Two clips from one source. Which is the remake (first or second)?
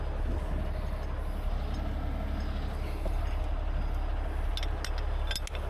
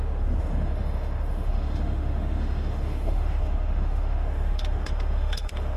second